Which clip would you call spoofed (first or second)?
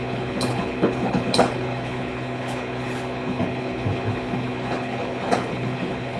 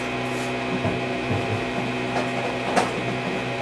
first